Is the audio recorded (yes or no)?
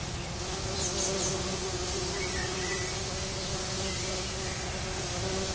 yes